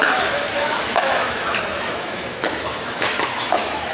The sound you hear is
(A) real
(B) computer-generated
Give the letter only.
B